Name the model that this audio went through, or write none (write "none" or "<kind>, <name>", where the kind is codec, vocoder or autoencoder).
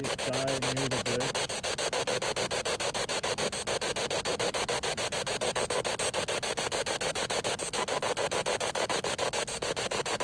none